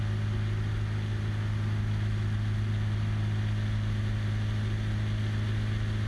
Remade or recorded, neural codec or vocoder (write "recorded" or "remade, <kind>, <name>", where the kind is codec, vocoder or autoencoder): recorded